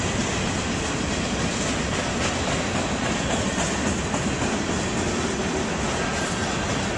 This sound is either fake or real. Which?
real